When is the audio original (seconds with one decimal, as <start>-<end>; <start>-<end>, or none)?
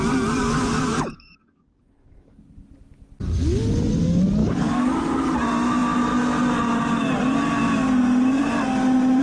0.0-0.4; 2.4-4.4; 5.2-9.2